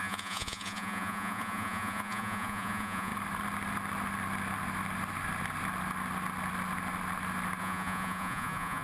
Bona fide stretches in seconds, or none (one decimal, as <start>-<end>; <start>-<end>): 3.1-7.6